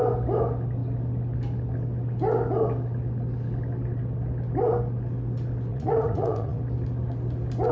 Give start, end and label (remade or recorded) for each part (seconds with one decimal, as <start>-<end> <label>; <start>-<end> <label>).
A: 0.0-5.7 recorded; 5.7-6.6 remade; 6.6-7.7 recorded